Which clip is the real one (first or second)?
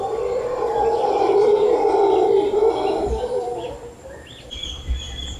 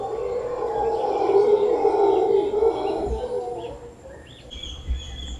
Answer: second